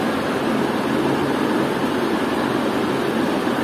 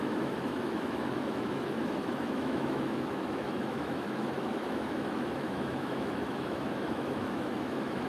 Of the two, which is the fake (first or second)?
second